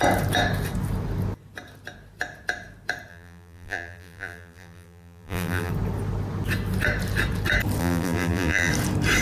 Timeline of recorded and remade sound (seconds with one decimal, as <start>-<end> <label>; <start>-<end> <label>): 0.0-3.1 recorded; 3.1-5.7 remade; 5.7-7.8 recorded; 7.8-8.7 remade; 8.7-9.2 recorded

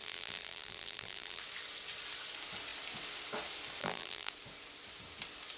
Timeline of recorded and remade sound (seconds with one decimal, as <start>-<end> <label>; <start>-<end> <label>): 0.0-1.4 remade; 1.4-3.8 recorded; 3.8-4.3 remade; 4.3-5.6 recorded

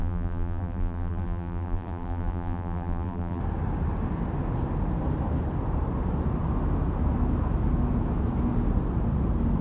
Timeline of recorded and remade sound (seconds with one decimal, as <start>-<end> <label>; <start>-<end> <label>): 0.0-3.4 remade; 3.4-9.6 recorded